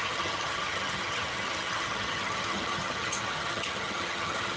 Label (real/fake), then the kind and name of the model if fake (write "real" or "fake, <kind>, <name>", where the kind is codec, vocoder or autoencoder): fake, vocoder, HiFi-GAN